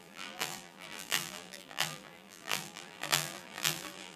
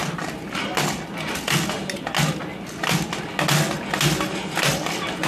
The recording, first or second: second